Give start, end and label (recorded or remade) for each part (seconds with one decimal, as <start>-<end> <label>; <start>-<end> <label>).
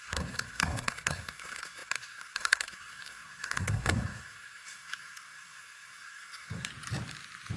0.0-6.7 remade; 6.7-7.6 recorded